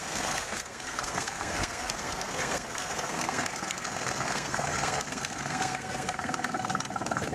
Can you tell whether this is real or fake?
fake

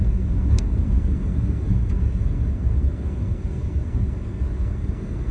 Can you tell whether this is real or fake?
fake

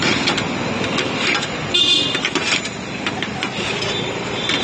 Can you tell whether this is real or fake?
real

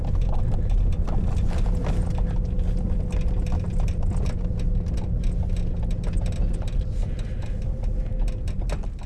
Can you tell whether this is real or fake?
real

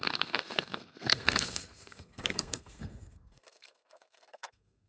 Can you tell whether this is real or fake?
fake